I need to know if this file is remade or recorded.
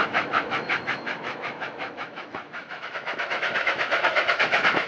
remade